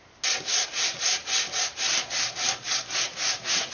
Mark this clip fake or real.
real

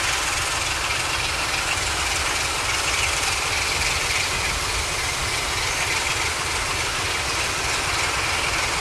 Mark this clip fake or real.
real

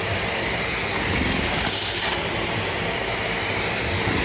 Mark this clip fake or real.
real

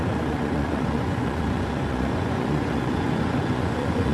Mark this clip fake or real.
fake